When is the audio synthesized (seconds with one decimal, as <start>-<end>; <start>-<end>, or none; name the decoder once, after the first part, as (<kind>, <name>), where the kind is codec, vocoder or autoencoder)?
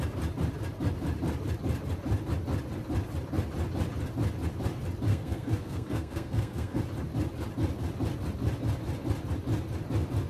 5.1-6.8 (codec, SNAC)